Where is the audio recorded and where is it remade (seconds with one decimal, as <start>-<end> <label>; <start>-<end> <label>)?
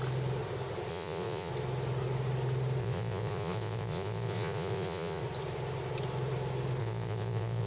0.0-0.9 recorded; 0.9-1.5 remade; 1.5-2.8 recorded; 2.8-5.2 remade; 5.2-6.8 recorded; 6.8-7.7 remade